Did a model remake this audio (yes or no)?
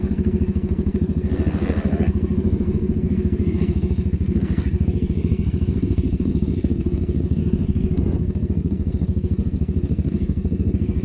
yes